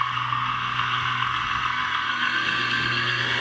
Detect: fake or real fake